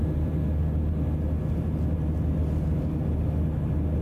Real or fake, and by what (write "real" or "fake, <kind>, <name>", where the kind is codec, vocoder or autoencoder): real